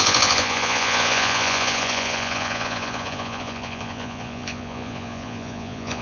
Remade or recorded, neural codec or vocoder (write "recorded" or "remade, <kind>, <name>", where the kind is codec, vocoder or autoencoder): remade, vocoder, Vocos